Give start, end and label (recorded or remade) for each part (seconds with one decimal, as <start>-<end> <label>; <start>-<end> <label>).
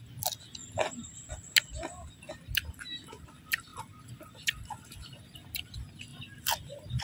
0.0-0.6 recorded; 0.6-1.3 remade; 1.3-7.0 recorded